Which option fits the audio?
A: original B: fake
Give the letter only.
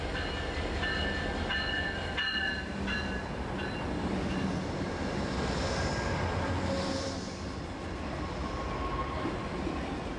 A